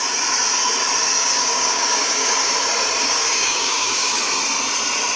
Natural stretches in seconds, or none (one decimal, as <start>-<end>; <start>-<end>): 0.0-1.2; 2.5-3.0; 4.2-5.2